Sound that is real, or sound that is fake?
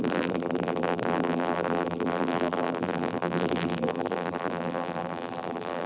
fake